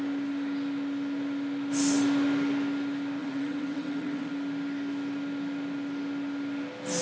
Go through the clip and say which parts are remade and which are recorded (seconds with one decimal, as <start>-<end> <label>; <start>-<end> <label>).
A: 0.0-3.2 recorded; 3.2-4.3 remade; 4.3-7.0 recorded